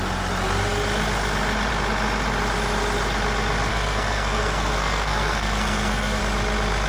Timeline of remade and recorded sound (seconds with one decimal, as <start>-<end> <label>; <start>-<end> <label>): 0.0-3.7 recorded; 3.7-6.2 remade; 6.2-6.9 recorded